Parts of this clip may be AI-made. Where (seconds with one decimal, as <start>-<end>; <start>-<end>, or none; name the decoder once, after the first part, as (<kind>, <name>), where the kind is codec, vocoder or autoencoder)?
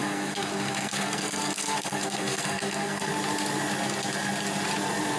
0.0-3.1 (codec, SNAC)